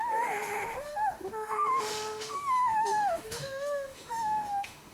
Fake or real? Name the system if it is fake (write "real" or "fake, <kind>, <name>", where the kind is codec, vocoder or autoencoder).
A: fake, autoencoder, DAC-VAE